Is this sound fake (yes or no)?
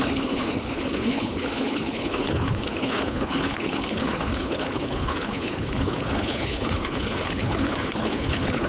yes